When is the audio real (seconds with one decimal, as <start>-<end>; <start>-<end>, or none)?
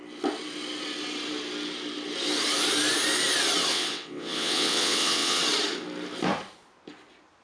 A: 0.0-3.7; 5.4-7.4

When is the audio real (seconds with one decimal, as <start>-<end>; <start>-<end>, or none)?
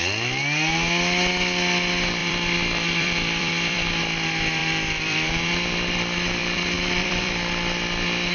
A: 0.0-2.2; 3.9-4.6; 5.7-6.4; 7.3-8.3